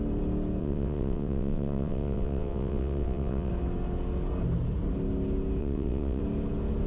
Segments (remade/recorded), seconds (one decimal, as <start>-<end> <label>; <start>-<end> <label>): 0.0-0.6 recorded; 0.6-3.5 remade; 3.5-5.6 recorded; 5.6-6.2 remade; 6.2-6.9 recorded